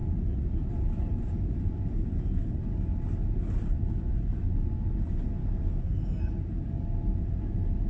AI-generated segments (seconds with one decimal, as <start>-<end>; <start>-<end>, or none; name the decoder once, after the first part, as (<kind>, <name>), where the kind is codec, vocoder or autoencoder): 5.4-6.4 (codec, SNAC)